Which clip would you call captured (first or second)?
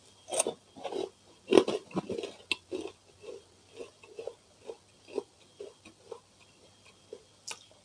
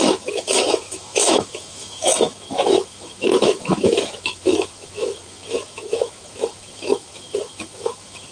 first